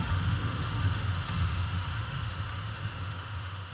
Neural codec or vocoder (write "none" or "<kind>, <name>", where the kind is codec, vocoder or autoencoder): autoencoder, DAC-VAE